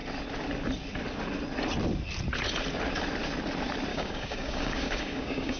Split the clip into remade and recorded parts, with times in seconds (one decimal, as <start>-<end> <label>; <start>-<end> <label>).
0.0-3.9 recorded; 3.9-5.6 remade